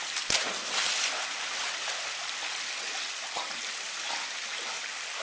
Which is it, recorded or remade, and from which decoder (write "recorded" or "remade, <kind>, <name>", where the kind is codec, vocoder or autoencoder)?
recorded